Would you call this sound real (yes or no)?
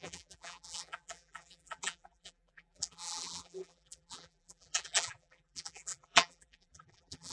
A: no